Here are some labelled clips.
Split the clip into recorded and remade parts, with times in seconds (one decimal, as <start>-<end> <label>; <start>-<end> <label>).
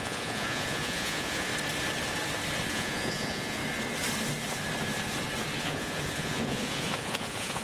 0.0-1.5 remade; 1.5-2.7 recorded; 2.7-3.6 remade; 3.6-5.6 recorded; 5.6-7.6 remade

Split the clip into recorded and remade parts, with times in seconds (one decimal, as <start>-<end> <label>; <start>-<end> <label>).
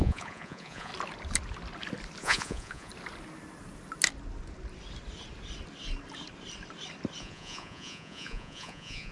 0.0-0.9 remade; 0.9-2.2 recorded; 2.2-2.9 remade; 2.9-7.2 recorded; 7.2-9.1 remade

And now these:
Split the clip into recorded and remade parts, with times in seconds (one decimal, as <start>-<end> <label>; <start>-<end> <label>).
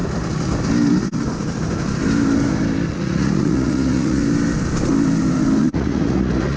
0.0-2.9 recorded; 2.9-4.2 remade; 4.2-5.6 recorded; 5.6-6.6 remade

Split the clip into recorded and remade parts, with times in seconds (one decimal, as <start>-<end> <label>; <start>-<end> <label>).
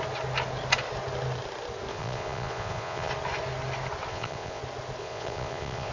0.0-1.9 recorded; 1.9-3.1 remade; 3.1-4.1 recorded; 4.1-4.6 remade; 4.6-5.0 recorded; 5.0-5.9 remade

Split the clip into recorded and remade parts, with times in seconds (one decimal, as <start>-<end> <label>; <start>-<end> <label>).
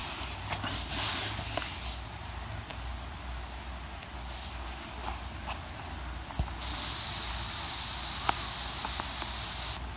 0.0-10.0 recorded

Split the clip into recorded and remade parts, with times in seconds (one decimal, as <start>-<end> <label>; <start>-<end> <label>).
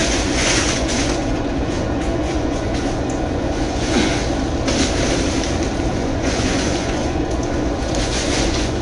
0.0-4.2 remade; 4.2-5.9 recorded; 5.9-8.8 remade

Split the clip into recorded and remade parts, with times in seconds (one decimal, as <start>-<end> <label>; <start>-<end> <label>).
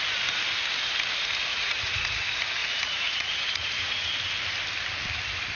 0.0-1.5 recorded; 1.5-2.1 remade; 2.1-2.6 recorded; 2.6-4.1 remade; 4.1-5.5 recorded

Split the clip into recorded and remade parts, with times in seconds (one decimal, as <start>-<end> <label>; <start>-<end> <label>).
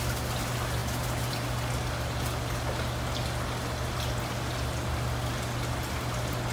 0.0-6.5 recorded